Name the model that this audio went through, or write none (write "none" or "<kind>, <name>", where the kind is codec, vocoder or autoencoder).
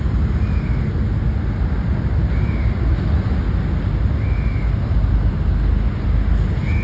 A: none